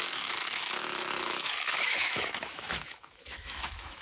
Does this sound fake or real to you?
fake